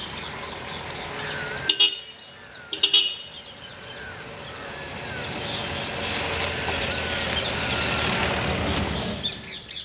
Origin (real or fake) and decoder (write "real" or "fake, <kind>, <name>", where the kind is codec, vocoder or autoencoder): real